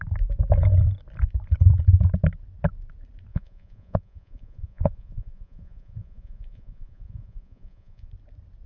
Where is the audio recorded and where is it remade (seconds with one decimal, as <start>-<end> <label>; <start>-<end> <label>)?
0.0-3.3 recorded; 3.3-8.1 remade; 8.1-8.7 recorded